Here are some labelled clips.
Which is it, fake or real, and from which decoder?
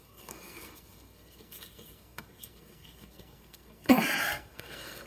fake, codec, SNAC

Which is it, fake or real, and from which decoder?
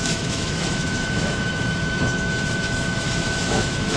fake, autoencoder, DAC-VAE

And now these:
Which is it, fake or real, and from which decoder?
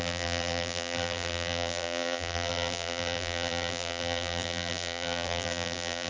fake, vocoder, BigVGAN v2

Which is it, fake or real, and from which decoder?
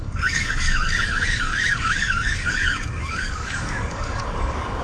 fake, codec, DAC